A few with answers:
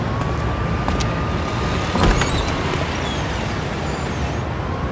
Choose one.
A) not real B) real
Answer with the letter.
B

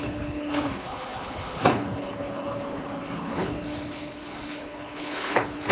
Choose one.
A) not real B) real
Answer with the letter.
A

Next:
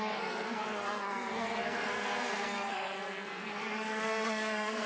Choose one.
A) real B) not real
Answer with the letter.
B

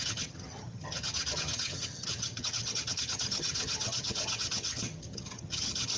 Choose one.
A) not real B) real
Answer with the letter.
A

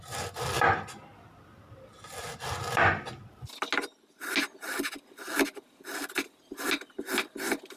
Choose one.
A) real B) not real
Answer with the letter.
A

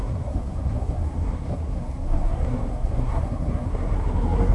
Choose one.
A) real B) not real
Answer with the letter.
B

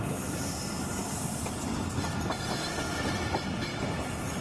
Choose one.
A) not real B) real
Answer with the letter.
B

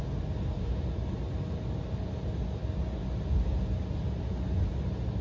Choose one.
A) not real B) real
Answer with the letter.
B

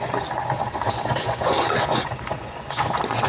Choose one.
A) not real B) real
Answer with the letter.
A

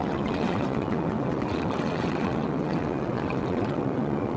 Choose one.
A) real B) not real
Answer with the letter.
B